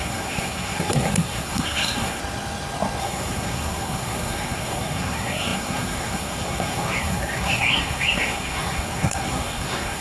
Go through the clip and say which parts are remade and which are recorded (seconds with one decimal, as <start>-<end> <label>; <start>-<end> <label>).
0.0-2.2 remade; 2.2-3.0 recorded; 3.0-10.0 remade

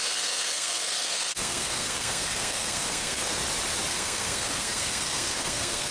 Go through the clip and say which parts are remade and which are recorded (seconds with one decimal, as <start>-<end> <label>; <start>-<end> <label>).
0.0-3.4 remade; 3.4-3.9 recorded; 3.9-5.9 remade

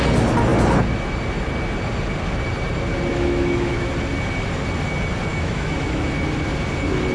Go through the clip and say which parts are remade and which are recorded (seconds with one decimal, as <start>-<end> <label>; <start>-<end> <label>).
0.0-3.1 recorded; 3.1-3.9 remade; 3.9-5.3 recorded; 5.3-6.1 remade; 6.1-7.1 recorded